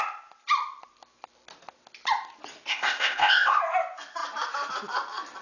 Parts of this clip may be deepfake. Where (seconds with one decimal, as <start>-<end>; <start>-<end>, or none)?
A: 2.7-3.6